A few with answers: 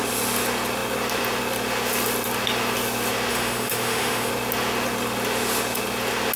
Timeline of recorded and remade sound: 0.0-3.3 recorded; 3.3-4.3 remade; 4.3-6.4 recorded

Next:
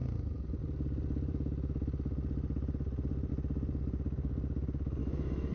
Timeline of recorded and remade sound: 0.0-5.0 recorded; 5.0-5.5 remade